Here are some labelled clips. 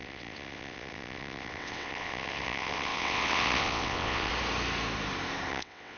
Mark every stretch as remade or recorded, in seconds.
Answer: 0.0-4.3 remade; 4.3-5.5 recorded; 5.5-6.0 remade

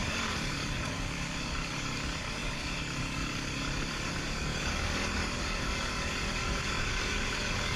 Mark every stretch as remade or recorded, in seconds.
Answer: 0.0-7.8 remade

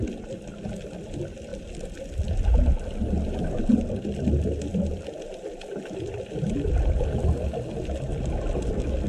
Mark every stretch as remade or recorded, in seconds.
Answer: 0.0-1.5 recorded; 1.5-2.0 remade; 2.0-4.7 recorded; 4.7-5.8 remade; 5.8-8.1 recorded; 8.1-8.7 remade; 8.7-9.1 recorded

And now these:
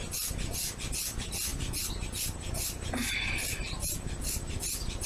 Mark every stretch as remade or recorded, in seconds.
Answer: 0.0-5.1 recorded

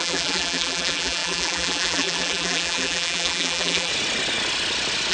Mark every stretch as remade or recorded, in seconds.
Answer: 0.0-3.9 remade; 3.9-5.1 recorded

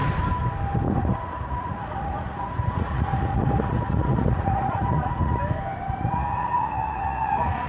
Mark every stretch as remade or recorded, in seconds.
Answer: 0.0-1.0 recorded; 1.0-5.4 remade; 5.4-6.0 recorded; 6.0-7.7 remade